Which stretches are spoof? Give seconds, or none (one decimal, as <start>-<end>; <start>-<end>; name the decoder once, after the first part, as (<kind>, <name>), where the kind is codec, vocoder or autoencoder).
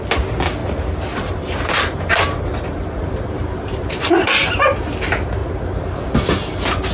0.6-4.7 (vocoder, BigVGAN v2); 5.4-6.0